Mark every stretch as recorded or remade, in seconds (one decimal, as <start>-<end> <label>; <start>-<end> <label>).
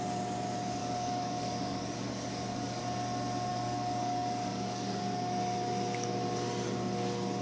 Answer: 0.0-0.8 recorded; 0.8-2.8 remade; 2.8-3.5 recorded; 3.5-5.0 remade; 5.0-7.4 recorded